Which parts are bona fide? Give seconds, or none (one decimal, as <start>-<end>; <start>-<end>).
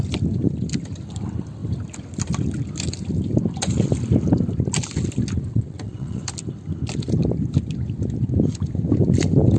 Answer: 0.0-5.5; 6.2-9.6